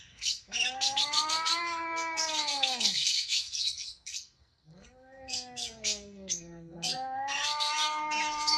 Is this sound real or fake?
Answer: fake